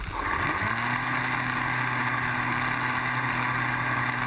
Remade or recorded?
recorded